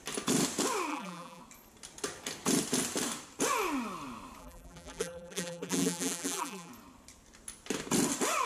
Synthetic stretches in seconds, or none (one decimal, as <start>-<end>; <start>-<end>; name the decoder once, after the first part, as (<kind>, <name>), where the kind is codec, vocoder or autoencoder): 0.9-1.4 (vocoder, BigVGAN v2); 4.4-6.7